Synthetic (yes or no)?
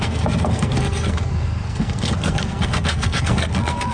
yes